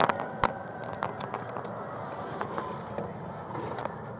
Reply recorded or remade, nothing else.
recorded